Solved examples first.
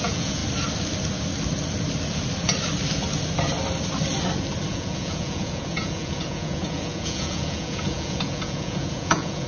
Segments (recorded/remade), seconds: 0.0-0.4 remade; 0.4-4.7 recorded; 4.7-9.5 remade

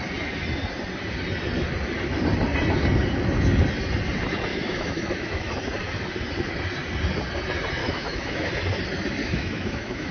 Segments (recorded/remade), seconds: 0.0-4.5 recorded; 4.5-5.5 remade; 5.5-7.8 recorded; 7.8-8.5 remade; 8.5-9.2 recorded; 9.2-10.1 remade

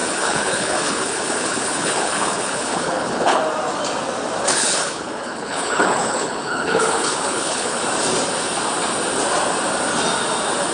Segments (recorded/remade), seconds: 0.0-3.4 remade; 3.4-4.5 recorded; 4.5-7.8 remade; 7.8-10.7 recorded

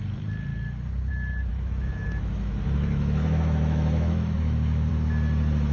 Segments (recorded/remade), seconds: 0.0-1.5 recorded; 1.5-4.9 remade; 4.9-5.7 recorded